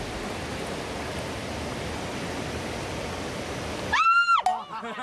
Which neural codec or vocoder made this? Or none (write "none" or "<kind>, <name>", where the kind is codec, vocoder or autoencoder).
none